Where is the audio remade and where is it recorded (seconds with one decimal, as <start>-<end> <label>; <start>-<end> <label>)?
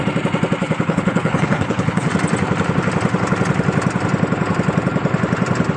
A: 0.0-0.6 recorded; 0.6-2.1 remade; 2.1-5.8 recorded